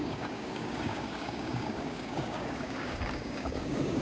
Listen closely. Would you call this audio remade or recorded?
remade